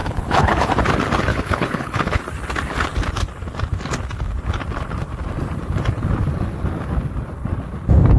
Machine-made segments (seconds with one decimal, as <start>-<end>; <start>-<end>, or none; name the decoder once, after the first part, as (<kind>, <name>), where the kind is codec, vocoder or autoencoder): 0.0-0.7 (codec, HILCodec); 1.3-2.2